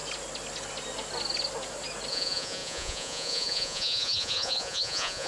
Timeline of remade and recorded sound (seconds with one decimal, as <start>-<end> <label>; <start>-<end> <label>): 0.0-2.1 recorded; 2.1-5.3 remade